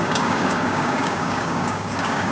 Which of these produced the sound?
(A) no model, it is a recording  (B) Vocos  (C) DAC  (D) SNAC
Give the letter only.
C